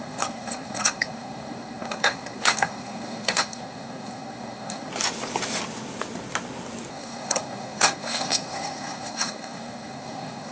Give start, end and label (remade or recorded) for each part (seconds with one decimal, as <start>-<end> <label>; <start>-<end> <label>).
0.0-4.9 remade; 4.9-6.9 recorded; 6.9-10.5 remade